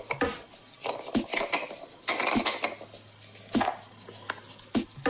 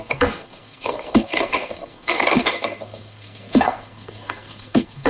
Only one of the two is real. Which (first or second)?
first